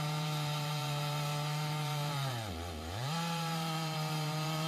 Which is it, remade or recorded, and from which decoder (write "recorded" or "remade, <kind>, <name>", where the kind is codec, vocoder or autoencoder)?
remade, vocoder, BigVGAN v2